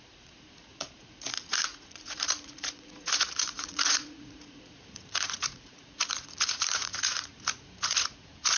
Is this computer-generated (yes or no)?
yes